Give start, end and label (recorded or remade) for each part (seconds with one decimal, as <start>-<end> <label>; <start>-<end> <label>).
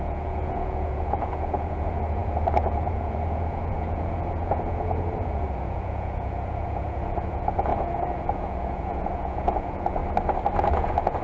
0.0-10.0 remade; 10.0-10.6 recorded; 10.6-11.2 remade